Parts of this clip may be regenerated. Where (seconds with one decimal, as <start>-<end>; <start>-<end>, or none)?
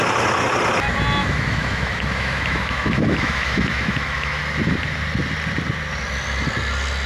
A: 1.2-4.4